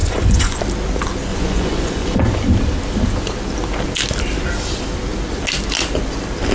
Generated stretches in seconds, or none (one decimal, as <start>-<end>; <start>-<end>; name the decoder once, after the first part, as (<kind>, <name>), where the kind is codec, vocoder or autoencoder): 0.0-0.6 (vocoder, Vocos); 1.3-2.2